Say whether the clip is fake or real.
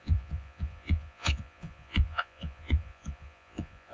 fake